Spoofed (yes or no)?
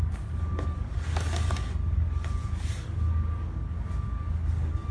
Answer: yes